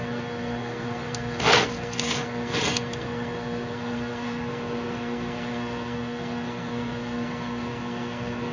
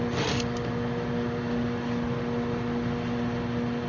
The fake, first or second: first